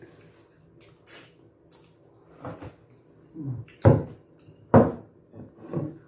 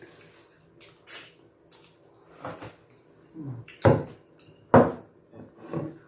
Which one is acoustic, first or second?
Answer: second